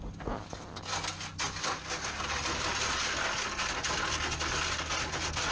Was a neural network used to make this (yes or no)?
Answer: no